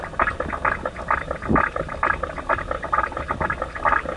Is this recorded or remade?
recorded